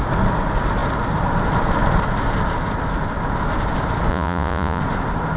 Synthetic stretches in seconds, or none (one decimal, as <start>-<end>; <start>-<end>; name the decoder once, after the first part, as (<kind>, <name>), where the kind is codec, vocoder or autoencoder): 4.1-4.8 (vocoder, Vocos)